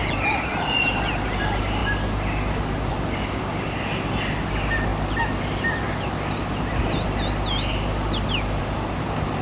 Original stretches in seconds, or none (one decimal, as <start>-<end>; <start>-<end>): none